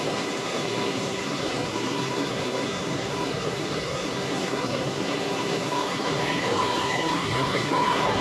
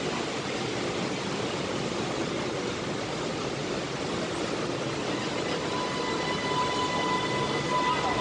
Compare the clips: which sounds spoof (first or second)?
first